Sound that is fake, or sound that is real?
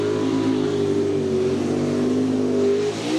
real